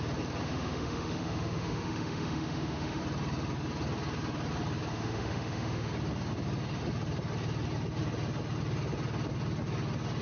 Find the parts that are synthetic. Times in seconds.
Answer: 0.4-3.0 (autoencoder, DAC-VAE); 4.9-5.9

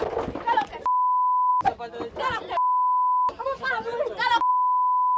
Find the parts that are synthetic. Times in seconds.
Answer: none

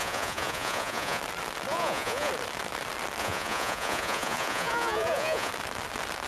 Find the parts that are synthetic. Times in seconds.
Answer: 0.0-1.2 (vocoder, Vocos); 1.7-2.3; 3.2-5.5

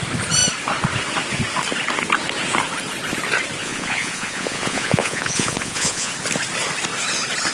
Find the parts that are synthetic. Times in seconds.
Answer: 3.6-6.1 (vocoder, Vocos)